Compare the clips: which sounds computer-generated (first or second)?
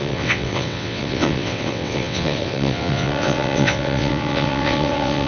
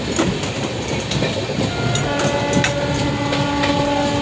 first